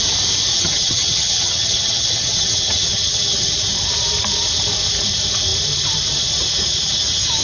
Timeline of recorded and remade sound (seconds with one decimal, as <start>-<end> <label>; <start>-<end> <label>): 0.0-0.5 recorded; 0.5-3.5 remade; 3.5-7.4 recorded